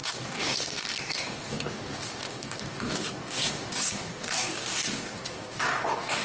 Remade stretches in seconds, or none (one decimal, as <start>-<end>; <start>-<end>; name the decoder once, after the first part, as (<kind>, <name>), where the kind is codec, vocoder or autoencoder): 0.0-6.2 (codec, DAC)